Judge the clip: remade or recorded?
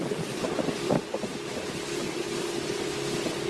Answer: recorded